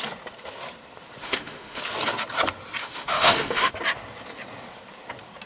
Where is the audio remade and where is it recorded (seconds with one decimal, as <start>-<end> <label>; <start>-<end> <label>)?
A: 0.0-1.2 recorded; 1.2-1.8 remade; 1.8-2.8 recorded; 2.8-3.7 remade; 3.7-5.5 recorded